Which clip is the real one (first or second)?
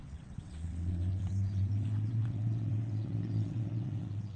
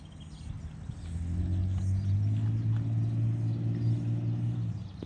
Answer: second